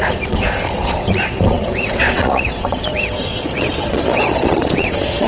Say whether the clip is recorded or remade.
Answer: remade